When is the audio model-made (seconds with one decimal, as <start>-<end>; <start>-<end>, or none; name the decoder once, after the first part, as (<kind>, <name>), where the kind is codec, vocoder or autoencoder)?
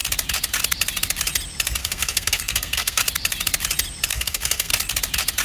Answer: 1.8-3.0 (codec, SNAC); 4.1-4.7